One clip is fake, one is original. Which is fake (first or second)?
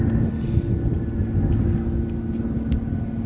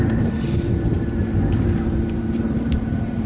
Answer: second